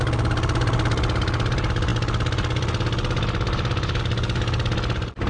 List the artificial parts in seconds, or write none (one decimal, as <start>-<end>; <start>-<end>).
none